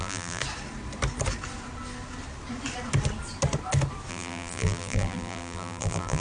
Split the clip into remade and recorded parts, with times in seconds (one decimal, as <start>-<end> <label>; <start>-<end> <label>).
0.0-0.4 remade; 0.4-4.1 recorded; 4.1-6.2 remade